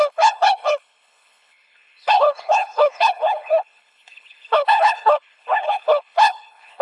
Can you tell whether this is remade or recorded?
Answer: remade